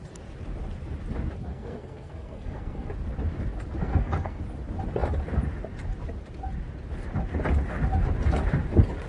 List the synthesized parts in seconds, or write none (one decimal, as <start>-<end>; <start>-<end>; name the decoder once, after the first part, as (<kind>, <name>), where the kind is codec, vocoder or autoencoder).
1.5-2.9 (codec, SNAC); 3.8-4.4